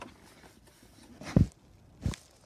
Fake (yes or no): no